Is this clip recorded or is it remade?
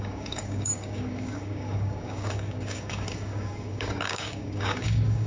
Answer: remade